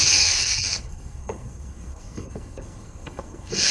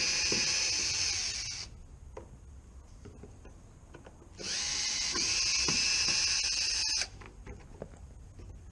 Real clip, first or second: second